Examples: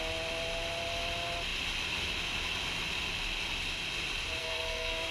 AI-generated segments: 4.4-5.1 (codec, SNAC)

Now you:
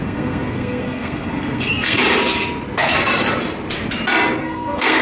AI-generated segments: 0.0-2.0 (codec, SNAC); 4.4-5.0

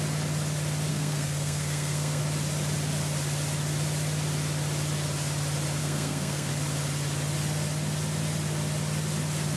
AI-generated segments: 0.9-2.2 (codec, SNAC); 5.8-6.5

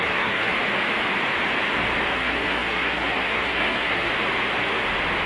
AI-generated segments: 0.0-0.5 (codec, SNAC); 2.1-4.1